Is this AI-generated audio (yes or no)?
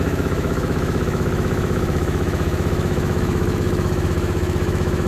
yes